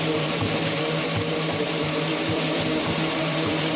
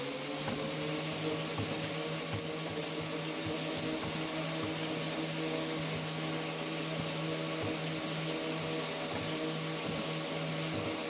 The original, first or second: second